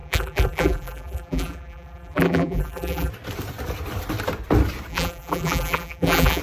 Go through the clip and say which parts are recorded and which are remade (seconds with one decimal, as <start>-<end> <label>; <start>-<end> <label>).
0.0-3.1 remade; 3.1-4.9 recorded; 4.9-6.4 remade